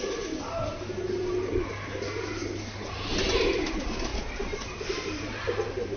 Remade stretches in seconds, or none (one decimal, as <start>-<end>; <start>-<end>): 4.1-6.0